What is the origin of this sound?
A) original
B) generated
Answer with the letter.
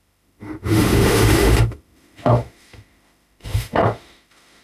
B